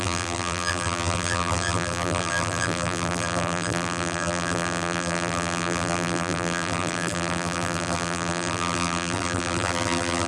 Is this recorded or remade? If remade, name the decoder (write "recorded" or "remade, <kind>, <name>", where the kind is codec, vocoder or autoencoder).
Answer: remade, vocoder, BigVGAN v2